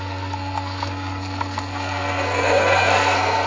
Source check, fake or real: fake